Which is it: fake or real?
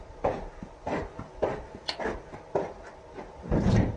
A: fake